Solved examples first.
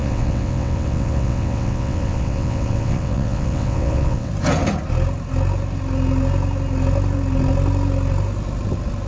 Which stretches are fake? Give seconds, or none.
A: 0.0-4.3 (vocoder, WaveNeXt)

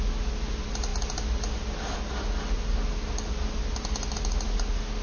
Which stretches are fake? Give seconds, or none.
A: none